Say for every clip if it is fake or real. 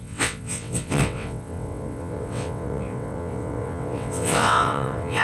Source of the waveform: fake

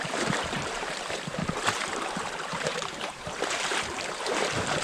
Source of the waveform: fake